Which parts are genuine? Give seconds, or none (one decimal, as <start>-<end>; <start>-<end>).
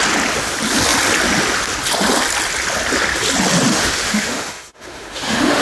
0.0-3.7